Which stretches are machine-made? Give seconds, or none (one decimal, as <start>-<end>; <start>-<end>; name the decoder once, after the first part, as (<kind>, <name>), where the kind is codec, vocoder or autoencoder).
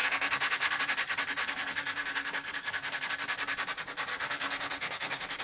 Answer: 0.0-0.8 (codec, SNAC); 1.4-3.1; 4.1-5.4